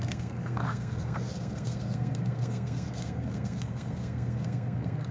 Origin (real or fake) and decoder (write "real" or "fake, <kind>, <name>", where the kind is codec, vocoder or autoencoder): fake, codec, SNAC